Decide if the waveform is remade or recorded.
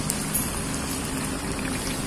recorded